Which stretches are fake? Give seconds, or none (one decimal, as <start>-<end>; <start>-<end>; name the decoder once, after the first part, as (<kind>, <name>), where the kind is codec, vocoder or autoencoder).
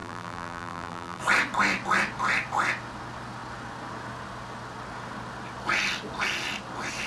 0.0-1.2 (vocoder, BigVGAN v2)